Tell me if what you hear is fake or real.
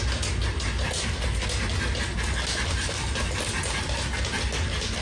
real